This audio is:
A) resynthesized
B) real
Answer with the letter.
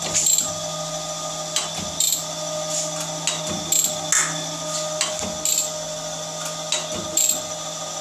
B